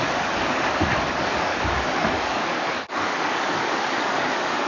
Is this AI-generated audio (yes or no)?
yes